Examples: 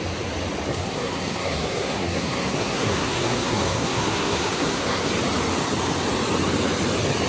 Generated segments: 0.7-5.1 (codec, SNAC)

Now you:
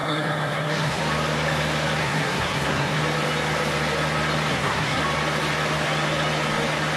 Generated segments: 0.0-1.0 (codec, SNAC); 2.0-3.0; 4.5-5.0

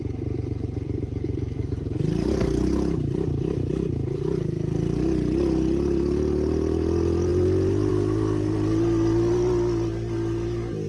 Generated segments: none